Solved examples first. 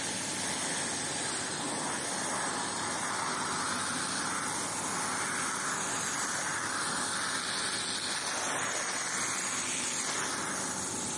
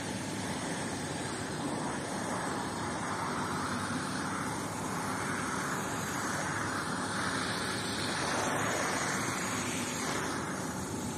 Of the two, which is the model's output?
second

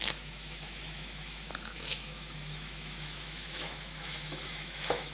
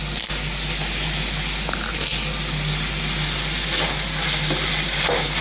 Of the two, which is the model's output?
first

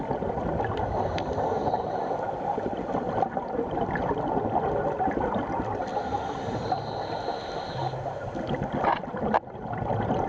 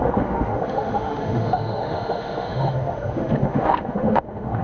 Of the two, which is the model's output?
second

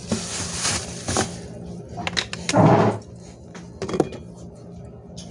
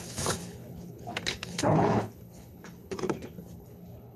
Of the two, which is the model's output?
second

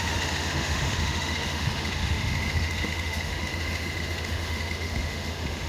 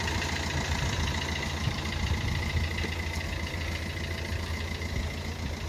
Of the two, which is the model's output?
first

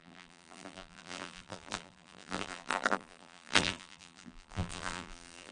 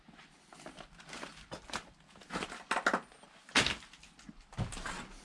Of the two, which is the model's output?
first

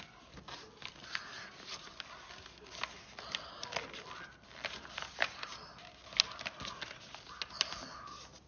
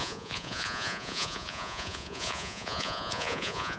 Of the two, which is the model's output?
second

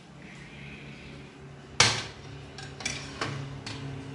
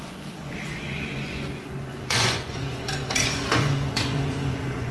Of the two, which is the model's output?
second